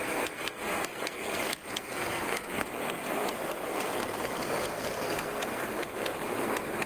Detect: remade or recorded remade